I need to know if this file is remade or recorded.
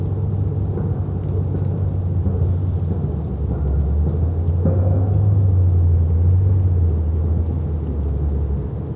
recorded